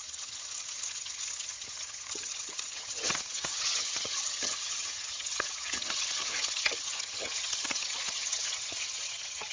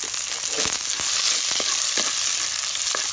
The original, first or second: second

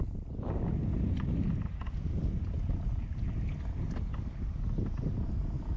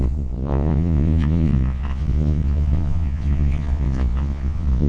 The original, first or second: first